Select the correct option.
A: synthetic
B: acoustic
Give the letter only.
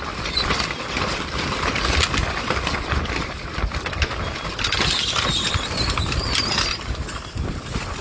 B